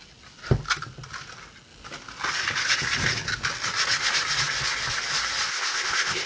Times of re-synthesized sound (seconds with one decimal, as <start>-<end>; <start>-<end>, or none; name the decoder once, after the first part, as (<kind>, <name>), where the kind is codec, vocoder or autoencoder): 5.5-6.3 (codec, ZipCodec)